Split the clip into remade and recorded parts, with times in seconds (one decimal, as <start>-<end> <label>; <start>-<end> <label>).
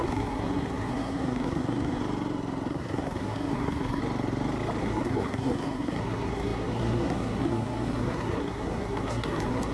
0.0-2.0 remade; 2.0-2.7 recorded; 2.7-4.0 remade; 4.0-4.8 recorded; 4.8-9.7 remade